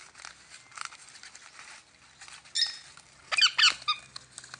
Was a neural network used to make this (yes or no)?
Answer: no